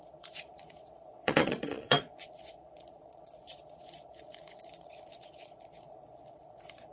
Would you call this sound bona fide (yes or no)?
no